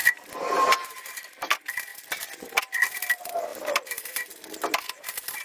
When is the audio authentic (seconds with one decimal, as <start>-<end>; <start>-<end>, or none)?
0.0-1.9; 2.6-3.5; 4.2-5.4